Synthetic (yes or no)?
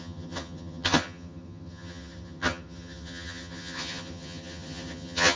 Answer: yes